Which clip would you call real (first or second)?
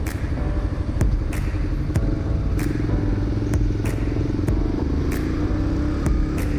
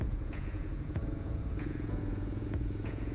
first